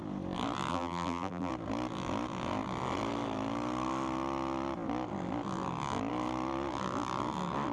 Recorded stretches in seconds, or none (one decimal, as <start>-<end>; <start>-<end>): 0.0-0.7; 1.5-7.7